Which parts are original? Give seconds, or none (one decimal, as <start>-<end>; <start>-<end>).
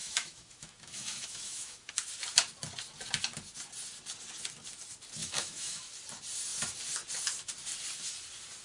1.9-5.2; 5.9-8.6